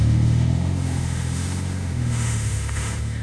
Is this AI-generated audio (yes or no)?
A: yes